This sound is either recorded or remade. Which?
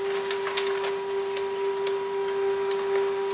recorded